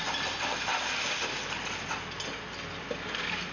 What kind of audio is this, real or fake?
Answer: real